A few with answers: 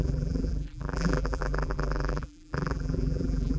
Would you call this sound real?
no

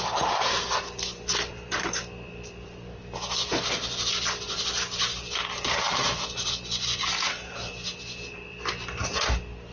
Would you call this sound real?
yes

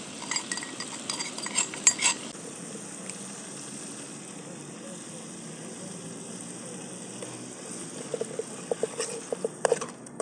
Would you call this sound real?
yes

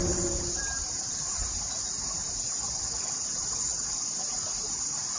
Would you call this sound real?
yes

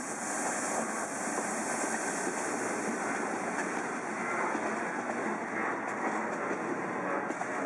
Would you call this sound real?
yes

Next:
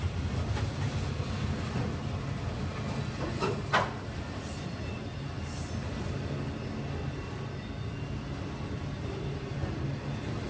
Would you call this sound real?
yes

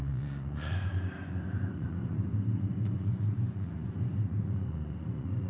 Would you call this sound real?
no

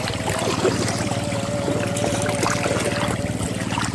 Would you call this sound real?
yes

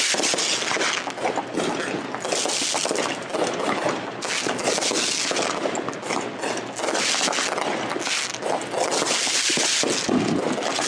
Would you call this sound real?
yes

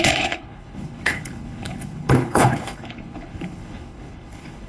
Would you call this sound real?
no